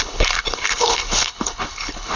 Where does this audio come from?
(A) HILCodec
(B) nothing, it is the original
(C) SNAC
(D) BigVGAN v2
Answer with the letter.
A